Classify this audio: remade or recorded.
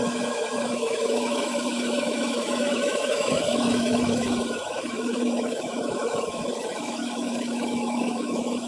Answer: remade